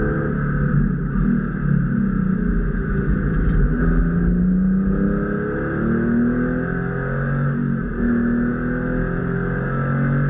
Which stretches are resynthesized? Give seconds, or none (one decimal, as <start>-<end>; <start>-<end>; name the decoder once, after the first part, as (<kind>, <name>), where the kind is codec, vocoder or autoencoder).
none

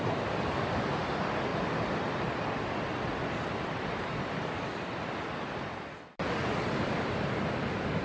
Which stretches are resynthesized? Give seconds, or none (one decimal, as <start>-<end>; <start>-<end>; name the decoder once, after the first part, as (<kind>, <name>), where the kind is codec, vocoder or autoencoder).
none